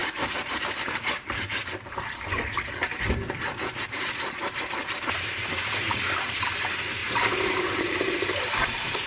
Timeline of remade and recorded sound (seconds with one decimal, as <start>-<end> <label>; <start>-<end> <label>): 0.0-0.9 remade; 0.9-7.0 recorded; 7.0-9.1 remade